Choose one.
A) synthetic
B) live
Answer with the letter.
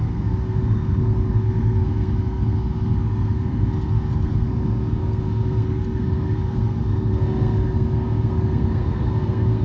A